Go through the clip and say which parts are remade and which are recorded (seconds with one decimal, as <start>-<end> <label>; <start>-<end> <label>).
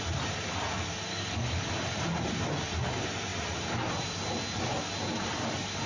0.0-1.1 recorded; 1.1-1.7 remade; 1.7-5.9 recorded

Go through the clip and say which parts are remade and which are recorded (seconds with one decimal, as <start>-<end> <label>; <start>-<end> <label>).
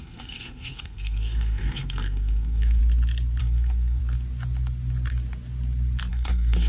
0.0-2.8 remade; 2.8-3.4 recorded; 3.4-4.0 remade; 4.0-6.1 recorded; 6.1-6.7 remade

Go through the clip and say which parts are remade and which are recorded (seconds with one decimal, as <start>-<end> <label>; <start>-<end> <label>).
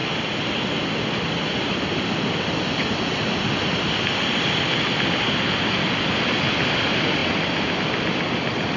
0.0-8.8 recorded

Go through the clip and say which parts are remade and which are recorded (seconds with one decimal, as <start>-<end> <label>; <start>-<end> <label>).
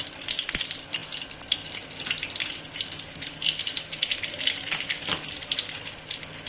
0.0-6.5 recorded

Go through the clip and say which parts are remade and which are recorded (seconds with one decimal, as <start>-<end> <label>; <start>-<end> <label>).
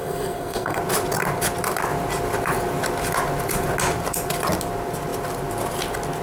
0.0-0.8 remade; 0.8-6.2 recorded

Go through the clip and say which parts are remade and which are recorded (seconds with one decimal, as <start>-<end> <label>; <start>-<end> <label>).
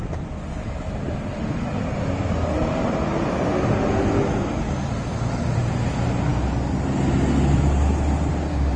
0.0-8.8 recorded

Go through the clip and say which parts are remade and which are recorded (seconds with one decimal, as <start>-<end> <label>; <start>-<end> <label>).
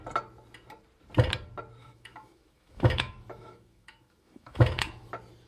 0.0-1.8 recorded; 1.8-5.1 remade; 5.1-5.5 recorded